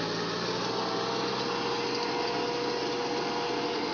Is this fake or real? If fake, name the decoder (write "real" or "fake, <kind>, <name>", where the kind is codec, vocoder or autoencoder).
real